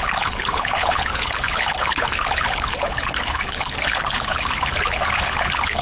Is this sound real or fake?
fake